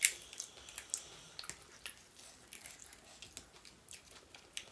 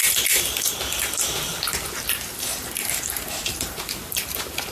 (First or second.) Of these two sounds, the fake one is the second